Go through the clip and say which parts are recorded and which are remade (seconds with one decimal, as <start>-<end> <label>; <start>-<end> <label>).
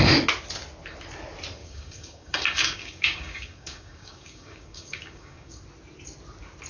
0.0-1.6 recorded; 1.6-5.6 remade; 5.6-6.7 recorded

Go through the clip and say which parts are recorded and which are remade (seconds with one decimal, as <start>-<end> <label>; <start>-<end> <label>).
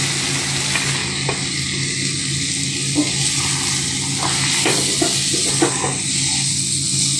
0.0-7.2 recorded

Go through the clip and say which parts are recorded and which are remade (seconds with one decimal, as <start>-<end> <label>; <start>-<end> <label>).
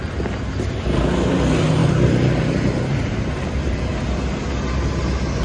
0.0-1.8 recorded; 1.8-4.0 remade; 4.0-5.4 recorded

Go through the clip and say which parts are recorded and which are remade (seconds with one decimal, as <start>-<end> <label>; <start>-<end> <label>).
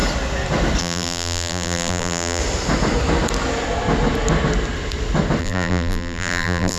0.0-0.8 recorded; 0.8-2.4 remade; 2.4-5.4 recorded; 5.4-6.8 remade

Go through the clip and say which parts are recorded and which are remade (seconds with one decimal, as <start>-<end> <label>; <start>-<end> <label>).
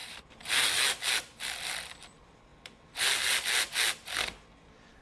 0.0-0.5 remade; 0.5-5.0 recorded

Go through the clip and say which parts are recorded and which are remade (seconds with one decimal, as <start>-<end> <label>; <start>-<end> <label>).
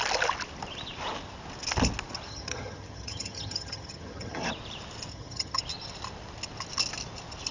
0.0-2.3 recorded; 2.3-4.4 remade; 4.4-5.1 recorded; 5.1-5.6 remade; 5.6-7.5 recorded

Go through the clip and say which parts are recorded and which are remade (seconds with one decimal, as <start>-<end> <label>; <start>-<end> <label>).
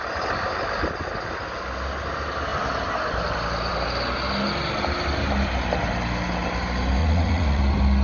0.0-7.0 recorded; 7.0-7.6 remade; 7.6-8.0 recorded